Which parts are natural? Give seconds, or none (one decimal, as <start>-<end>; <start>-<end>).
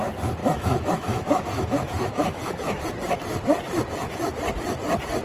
0.0-0.4; 2.8-5.2